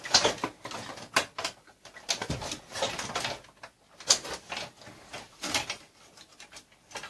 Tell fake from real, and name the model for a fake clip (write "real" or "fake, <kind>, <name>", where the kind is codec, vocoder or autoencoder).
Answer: real